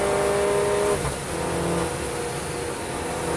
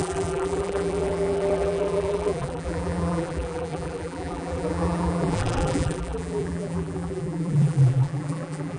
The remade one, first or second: second